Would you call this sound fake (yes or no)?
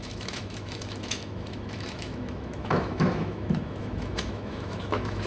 yes